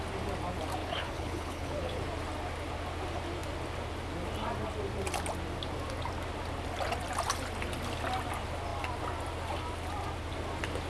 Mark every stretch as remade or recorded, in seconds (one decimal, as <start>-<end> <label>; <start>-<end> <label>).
0.0-0.8 recorded; 0.8-2.0 remade; 2.0-10.9 recorded